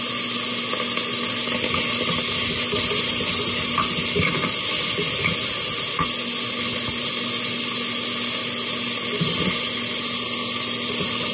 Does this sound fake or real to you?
real